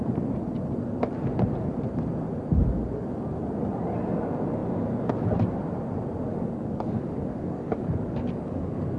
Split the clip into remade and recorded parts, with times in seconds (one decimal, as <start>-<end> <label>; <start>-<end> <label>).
0.0-6.3 recorded; 6.3-9.0 remade